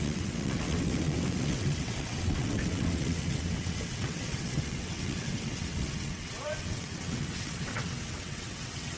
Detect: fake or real fake